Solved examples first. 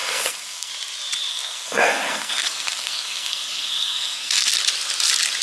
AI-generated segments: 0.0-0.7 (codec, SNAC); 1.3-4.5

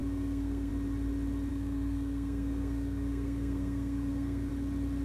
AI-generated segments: 0.0-0.7 (codec, SNAC); 1.5-4.5